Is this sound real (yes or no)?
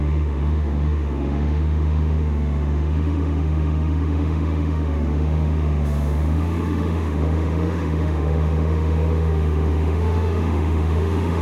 no